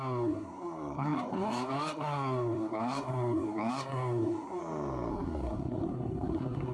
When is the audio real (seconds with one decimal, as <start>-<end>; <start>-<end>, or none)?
4.6-5.1